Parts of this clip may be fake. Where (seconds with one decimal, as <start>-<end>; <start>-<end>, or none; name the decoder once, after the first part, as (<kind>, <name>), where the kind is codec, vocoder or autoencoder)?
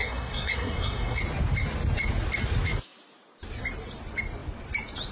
0.0-1.2 (codec, SNAC)